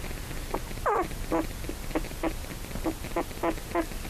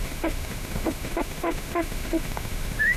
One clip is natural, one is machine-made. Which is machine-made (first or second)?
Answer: second